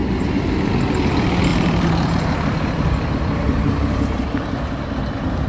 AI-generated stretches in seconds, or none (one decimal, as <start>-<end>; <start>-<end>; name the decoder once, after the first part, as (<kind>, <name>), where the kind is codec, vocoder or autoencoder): 1.5-4.2 (vocoder, BigVGAN v2)